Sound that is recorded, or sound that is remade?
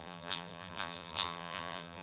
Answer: remade